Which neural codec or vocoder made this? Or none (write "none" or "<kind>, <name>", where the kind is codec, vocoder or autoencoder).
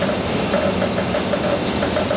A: none